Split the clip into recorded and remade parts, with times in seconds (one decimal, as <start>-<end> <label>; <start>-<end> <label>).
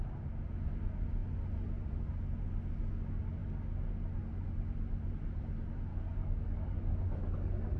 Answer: 0.0-5.9 recorded; 5.9-7.8 remade